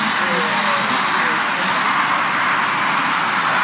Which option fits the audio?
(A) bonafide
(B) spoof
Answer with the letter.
A